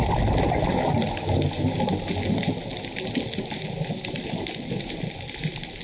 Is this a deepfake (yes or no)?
no